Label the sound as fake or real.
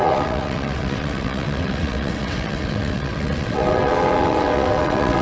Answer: fake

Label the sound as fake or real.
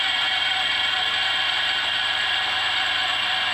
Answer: fake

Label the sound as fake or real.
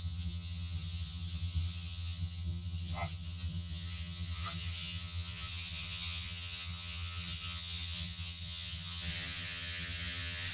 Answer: fake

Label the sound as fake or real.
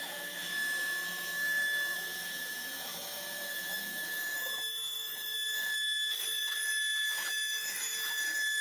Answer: fake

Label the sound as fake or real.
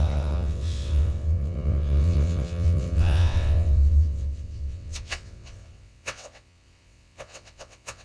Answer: fake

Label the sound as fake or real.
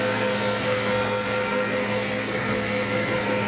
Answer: fake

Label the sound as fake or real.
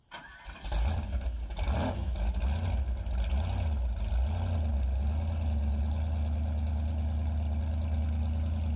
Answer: real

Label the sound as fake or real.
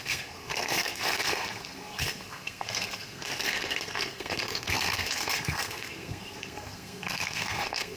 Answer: fake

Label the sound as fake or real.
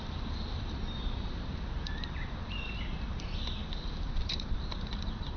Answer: fake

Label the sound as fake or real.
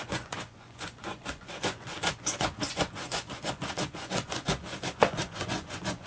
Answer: fake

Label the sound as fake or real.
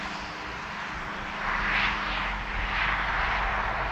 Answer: real